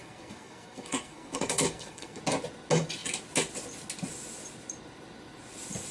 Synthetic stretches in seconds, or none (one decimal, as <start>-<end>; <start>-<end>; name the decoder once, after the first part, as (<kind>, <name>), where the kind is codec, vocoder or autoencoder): 0.0-2.2 (codec, SNAC)